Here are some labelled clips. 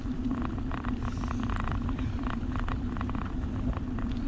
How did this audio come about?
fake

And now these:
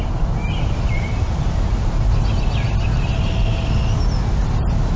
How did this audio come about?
real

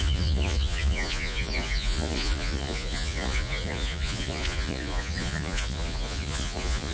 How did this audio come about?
fake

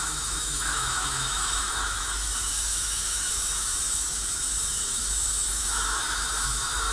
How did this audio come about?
fake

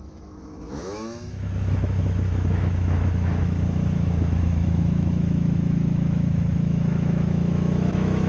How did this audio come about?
fake